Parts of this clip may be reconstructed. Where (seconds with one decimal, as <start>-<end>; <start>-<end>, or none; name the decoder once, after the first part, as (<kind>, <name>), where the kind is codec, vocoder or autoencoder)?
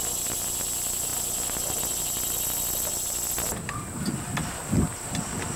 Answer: none